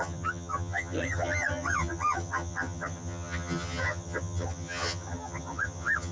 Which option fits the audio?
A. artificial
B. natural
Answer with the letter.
A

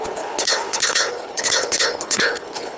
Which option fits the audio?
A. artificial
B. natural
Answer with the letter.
A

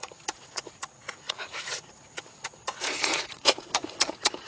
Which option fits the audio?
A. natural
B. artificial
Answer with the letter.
B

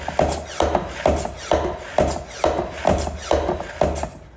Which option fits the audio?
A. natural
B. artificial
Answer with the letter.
A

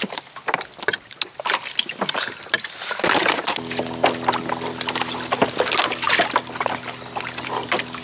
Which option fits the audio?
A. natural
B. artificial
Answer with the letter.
A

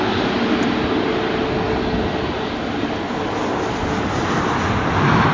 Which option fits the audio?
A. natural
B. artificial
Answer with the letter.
A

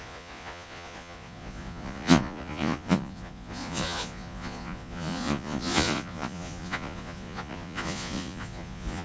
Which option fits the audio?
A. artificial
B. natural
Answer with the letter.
A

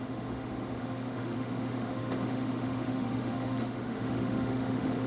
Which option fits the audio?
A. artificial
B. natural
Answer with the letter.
A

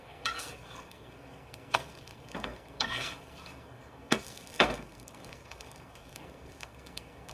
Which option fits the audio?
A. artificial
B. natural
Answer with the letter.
A